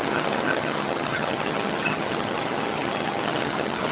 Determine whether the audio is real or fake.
fake